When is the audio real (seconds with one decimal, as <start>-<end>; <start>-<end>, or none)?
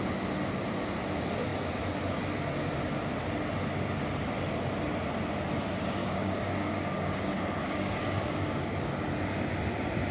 0.0-6.0; 8.9-10.1